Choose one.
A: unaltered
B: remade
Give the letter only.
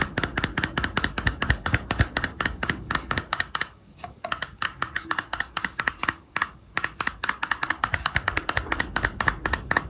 B